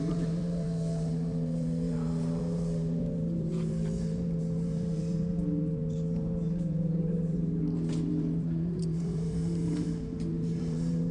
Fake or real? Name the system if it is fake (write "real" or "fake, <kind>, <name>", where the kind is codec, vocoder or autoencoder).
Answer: fake, vocoder, BigVGAN v2